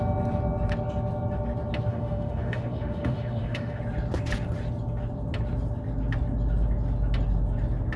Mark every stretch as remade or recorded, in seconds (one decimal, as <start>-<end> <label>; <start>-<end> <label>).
0.0-1.9 recorded; 1.9-3.8 remade; 3.8-8.0 recorded